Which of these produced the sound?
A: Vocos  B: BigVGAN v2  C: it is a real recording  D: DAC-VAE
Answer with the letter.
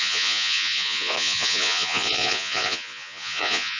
A